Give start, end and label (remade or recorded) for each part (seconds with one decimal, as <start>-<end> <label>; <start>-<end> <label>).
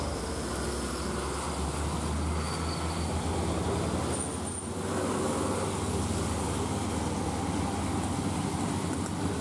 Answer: 0.0-9.4 recorded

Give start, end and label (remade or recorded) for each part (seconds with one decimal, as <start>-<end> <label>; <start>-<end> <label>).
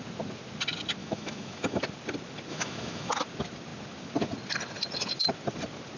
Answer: 0.0-1.0 recorded; 1.0-1.8 remade; 1.8-2.5 recorded; 2.5-3.1 remade; 3.1-6.0 recorded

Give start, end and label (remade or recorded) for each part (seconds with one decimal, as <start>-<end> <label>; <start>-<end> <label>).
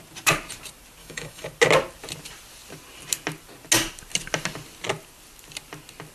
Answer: 0.0-1.0 recorded; 1.0-1.5 remade; 1.5-6.1 recorded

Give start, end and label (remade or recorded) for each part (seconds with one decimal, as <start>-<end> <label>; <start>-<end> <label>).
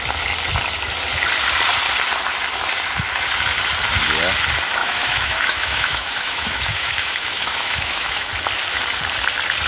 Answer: 0.0-4.8 recorded; 4.8-8.3 remade; 8.3-9.7 recorded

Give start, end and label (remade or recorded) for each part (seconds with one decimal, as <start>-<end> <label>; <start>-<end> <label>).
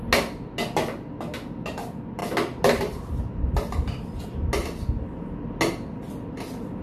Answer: 0.0-6.8 recorded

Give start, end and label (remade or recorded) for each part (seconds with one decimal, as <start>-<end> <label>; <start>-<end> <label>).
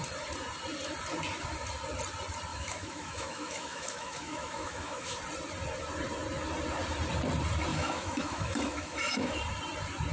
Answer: 0.0-2.5 recorded; 2.5-5.2 remade; 5.2-7.7 recorded; 7.7-9.4 remade; 9.4-10.1 recorded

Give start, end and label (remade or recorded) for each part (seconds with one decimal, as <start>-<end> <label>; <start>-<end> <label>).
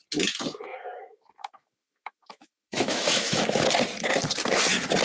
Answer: 0.0-0.7 recorded; 0.7-3.7 remade; 3.7-5.0 recorded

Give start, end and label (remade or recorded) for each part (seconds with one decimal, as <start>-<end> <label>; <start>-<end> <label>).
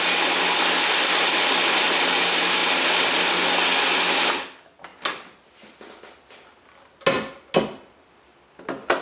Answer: 0.0-9.0 recorded